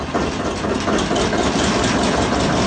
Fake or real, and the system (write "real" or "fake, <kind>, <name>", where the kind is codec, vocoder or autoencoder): real